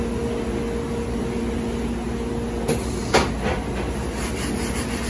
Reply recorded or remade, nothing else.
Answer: recorded